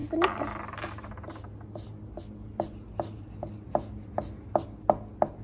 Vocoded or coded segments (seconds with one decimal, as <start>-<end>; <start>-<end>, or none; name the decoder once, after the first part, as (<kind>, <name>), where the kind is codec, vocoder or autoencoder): none